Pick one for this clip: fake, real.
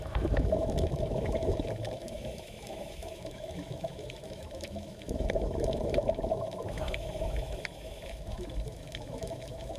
fake